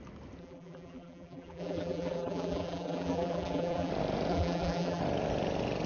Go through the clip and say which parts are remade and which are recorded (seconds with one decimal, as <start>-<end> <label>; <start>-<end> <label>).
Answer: 0.0-0.4 recorded; 0.4-3.9 remade; 3.9-4.3 recorded; 4.3-5.0 remade; 5.0-5.9 recorded